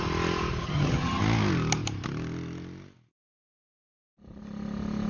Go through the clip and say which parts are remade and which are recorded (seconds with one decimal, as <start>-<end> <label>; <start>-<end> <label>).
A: 0.0-0.6 recorded; 0.6-1.2 remade; 1.2-5.1 recorded